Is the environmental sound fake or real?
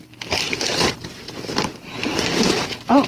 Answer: fake